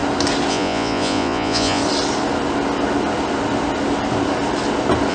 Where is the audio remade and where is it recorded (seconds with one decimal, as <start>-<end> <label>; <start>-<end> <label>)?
0.0-0.5 recorded; 0.5-1.8 remade; 1.8-5.1 recorded